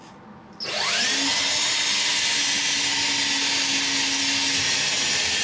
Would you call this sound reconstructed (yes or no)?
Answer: no